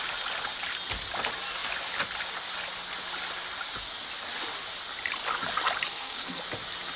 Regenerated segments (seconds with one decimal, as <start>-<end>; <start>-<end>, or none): 5.9-6.4